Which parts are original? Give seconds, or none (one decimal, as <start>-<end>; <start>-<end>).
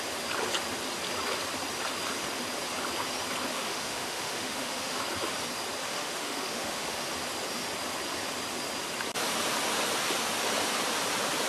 0.0-3.5; 5.0-5.8; 7.1-11.5